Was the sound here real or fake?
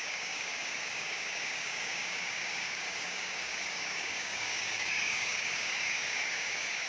fake